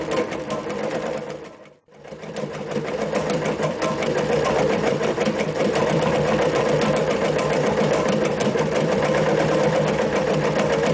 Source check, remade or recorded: remade